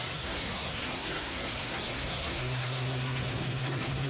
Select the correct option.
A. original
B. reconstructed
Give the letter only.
B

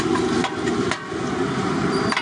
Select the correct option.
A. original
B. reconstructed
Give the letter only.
A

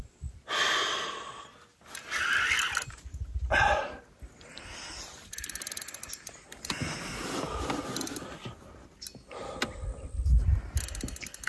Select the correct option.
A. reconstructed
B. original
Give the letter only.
B